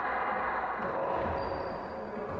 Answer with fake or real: real